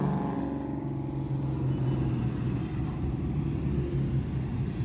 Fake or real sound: real